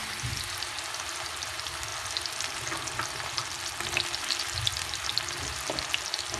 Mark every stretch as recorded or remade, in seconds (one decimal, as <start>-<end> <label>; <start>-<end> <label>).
0.0-6.4 recorded